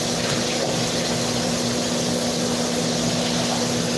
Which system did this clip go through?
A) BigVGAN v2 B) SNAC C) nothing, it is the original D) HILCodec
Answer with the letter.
C